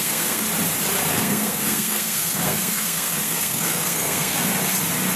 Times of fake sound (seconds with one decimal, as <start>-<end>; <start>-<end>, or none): 0.0-0.4; 1.1-4.5